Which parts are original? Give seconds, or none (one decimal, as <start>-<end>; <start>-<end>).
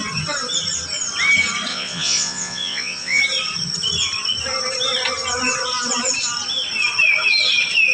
0.0-1.7; 3.2-7.9